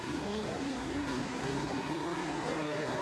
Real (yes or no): no